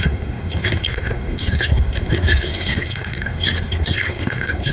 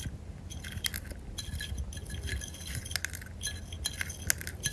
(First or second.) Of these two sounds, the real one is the second